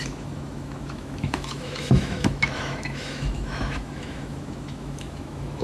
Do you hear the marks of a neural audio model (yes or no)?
yes